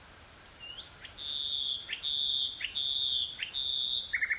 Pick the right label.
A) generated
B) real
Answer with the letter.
B